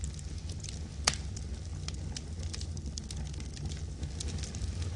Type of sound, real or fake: real